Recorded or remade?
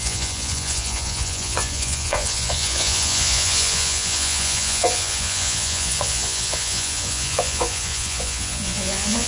remade